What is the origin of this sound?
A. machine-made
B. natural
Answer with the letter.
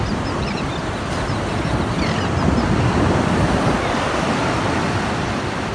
B